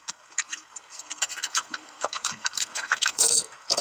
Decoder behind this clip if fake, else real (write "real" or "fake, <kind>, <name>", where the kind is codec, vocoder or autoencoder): fake, codec, SNAC